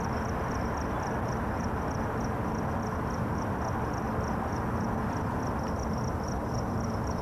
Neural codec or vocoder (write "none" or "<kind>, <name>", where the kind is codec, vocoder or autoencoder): none